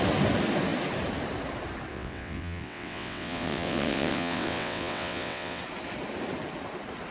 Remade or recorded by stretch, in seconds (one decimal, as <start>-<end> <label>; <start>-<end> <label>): 0.0-1.9 recorded; 1.9-5.6 remade; 5.6-7.1 recorded